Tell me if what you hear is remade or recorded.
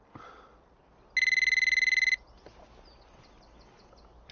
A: recorded